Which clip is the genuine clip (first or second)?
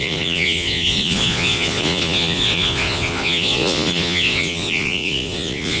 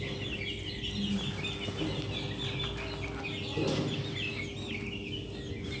second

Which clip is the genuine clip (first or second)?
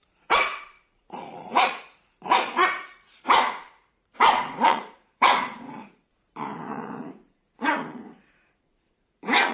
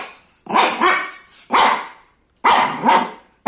second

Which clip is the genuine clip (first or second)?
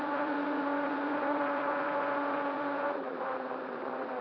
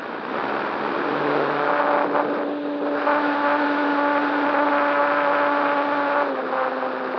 second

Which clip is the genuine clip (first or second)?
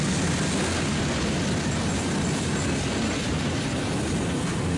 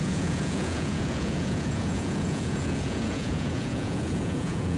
first